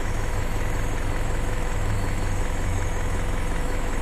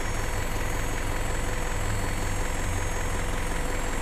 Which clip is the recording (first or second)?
second